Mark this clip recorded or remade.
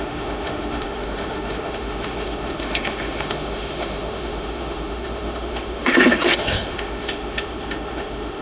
remade